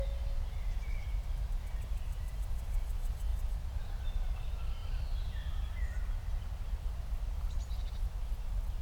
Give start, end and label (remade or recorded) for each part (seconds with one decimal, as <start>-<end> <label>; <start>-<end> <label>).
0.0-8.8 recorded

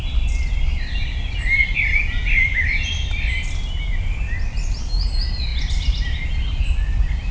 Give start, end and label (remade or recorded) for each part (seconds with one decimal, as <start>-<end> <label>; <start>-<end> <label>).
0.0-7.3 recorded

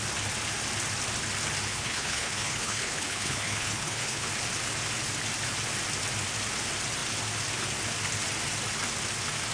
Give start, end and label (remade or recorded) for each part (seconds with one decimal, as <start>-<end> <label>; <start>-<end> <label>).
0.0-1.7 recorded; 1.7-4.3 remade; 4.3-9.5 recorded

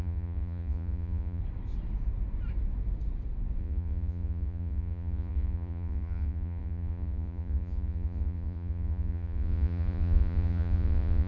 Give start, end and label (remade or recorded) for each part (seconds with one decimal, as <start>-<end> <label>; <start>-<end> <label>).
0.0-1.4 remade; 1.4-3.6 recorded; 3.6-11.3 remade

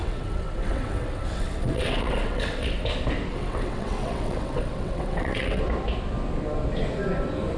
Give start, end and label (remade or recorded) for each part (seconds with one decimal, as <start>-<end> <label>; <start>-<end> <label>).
0.0-2.8 remade; 2.8-3.3 recorded; 3.3-5.6 remade; 5.6-7.6 recorded